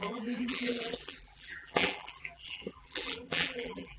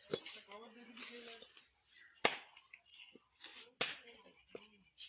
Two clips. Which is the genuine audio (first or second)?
second